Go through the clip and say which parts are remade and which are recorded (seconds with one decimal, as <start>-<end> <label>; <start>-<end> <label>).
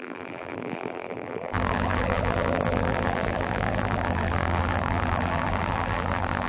0.0-6.5 remade